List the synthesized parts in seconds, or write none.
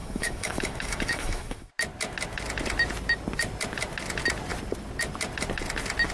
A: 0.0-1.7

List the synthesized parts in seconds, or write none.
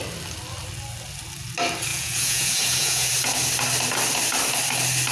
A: 1.9-3.1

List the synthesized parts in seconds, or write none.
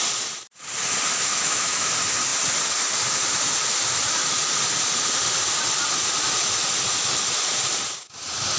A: 1.3-1.9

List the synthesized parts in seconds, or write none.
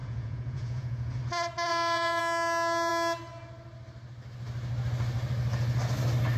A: 0.0-1.2; 1.7-2.2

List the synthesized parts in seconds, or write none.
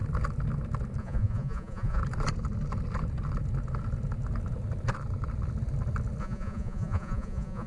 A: 1.0-2.0; 6.2-7.7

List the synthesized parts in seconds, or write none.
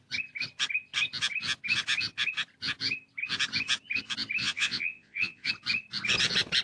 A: 4.4-5.5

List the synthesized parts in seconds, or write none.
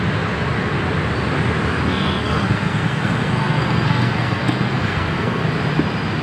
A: 1.9-5.4